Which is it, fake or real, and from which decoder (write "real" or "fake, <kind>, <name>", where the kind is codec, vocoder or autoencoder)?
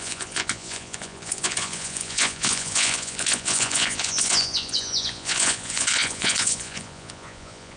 fake, vocoder, Vocos